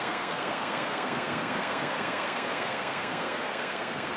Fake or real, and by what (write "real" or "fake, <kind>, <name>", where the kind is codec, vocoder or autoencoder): fake, codec, SNAC